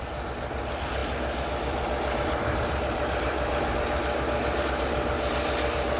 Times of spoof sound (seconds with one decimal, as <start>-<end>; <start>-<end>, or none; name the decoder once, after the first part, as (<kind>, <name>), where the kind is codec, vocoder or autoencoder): none